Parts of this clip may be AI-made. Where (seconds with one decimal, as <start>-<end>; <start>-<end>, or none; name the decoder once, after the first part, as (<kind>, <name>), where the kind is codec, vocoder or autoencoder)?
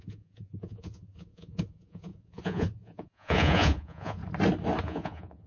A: 0.0-4.2 (vocoder, Vocos); 4.8-5.5